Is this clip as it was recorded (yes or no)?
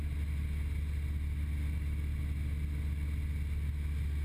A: yes